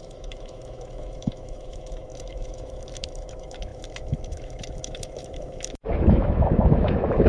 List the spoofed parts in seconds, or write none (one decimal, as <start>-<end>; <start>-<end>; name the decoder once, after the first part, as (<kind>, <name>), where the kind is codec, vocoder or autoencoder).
0.0-7.3 (autoencoder, DAC-VAE)